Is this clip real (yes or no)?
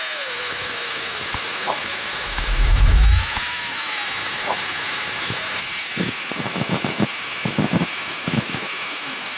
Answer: no